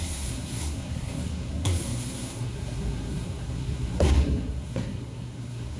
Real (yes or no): no